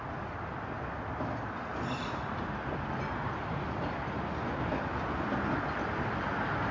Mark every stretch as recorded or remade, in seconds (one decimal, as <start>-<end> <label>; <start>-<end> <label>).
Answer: 0.0-6.7 recorded